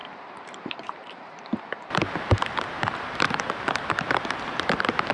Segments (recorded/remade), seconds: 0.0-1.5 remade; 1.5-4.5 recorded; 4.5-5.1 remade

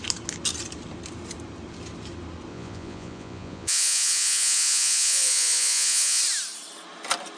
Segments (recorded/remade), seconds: 0.0-2.5 recorded; 2.5-6.2 remade; 6.2-7.4 recorded

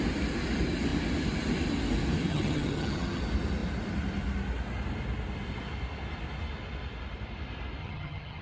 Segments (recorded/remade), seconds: 0.0-2.3 recorded; 2.3-3.2 remade; 3.2-7.8 recorded; 7.8-8.4 remade